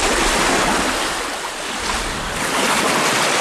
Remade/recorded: recorded